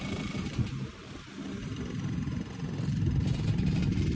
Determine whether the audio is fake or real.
fake